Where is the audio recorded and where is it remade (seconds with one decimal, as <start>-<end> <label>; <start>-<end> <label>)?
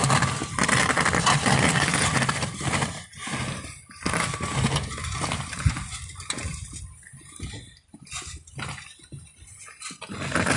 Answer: 0.0-10.6 recorded